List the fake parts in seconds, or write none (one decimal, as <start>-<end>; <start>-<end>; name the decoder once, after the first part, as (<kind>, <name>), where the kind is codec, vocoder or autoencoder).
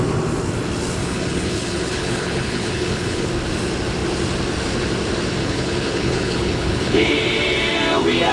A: 1.0-3.3 (codec, HILCodec); 5.4-7.1